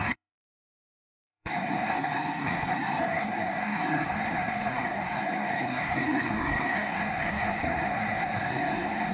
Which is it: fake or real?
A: fake